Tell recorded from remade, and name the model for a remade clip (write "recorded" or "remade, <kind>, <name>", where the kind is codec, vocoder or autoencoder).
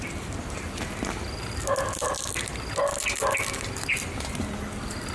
recorded